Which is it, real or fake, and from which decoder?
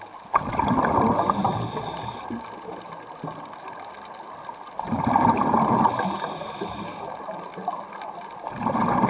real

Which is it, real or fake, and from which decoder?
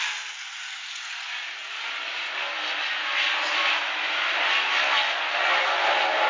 real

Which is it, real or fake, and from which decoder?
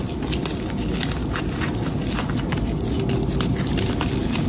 real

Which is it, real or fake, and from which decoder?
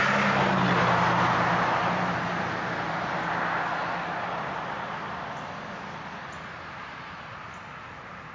real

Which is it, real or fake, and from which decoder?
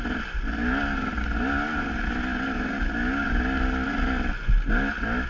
real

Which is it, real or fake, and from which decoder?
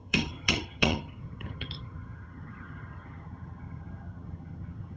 fake, vocoder, HiFi-GAN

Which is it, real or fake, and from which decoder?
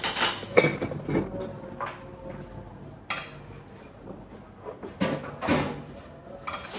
real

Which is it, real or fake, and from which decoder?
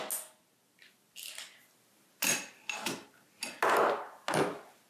real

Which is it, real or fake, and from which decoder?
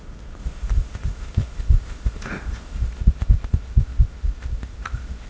fake, codec, ZipCodec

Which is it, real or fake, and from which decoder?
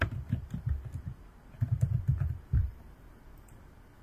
fake, vocoder, BigVGAN v2